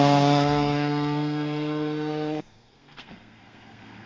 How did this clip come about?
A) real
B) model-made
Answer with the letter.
B